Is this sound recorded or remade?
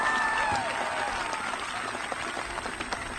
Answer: recorded